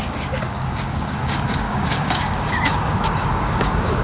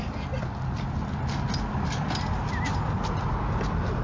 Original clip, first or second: second